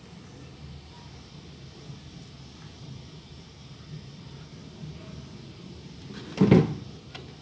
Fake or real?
real